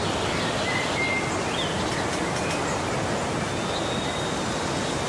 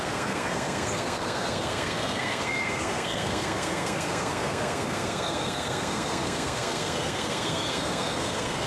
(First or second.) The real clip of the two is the first